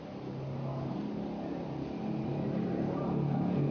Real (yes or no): yes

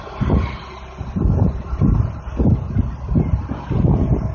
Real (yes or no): yes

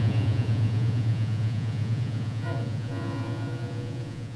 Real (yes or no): no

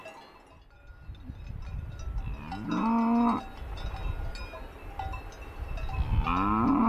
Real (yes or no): yes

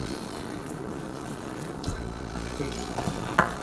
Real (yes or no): no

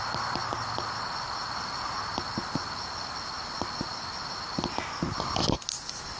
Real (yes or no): yes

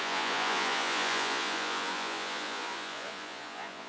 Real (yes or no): no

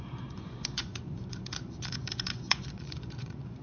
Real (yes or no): no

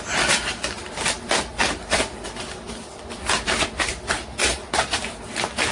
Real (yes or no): yes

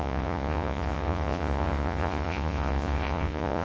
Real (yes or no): no